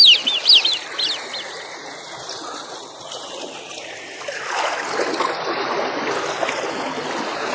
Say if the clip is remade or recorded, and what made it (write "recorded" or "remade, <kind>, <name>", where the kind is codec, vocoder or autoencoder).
recorded